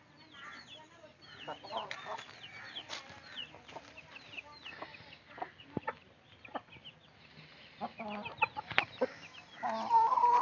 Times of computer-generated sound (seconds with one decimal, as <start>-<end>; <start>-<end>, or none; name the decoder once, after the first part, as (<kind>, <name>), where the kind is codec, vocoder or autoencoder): none